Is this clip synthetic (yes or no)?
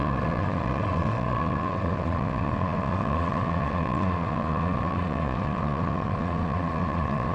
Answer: yes